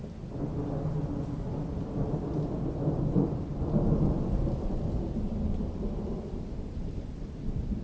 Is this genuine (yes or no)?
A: yes